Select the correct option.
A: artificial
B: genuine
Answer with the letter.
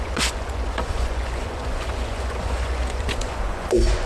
A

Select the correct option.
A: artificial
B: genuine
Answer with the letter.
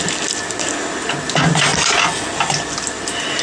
B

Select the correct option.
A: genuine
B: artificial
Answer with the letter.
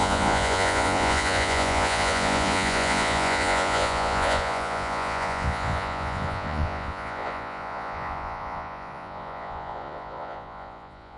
B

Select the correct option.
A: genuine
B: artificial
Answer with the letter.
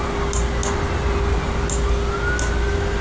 A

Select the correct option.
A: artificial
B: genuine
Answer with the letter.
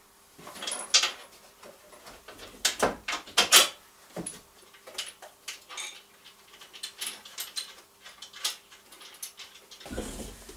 B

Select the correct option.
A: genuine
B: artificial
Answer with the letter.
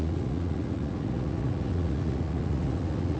B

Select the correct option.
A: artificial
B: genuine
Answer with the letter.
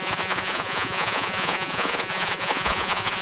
A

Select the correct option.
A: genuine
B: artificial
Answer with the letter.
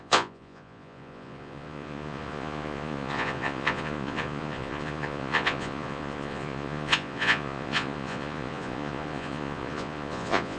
B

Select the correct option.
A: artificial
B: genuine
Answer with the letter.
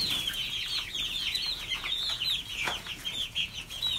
A